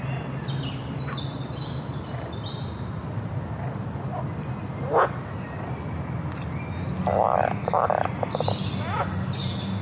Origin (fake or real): real